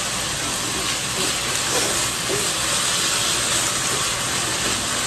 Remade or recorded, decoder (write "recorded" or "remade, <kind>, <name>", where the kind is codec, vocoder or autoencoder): recorded